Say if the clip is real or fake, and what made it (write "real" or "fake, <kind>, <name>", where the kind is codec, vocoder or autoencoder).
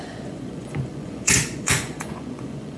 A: fake, vocoder, Vocos